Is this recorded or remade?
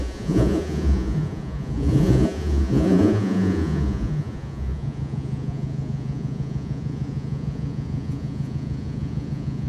remade